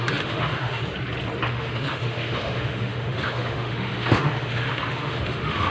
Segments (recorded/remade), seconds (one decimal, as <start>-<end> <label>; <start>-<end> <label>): 0.0-0.8 remade; 0.8-1.5 recorded; 1.5-5.7 remade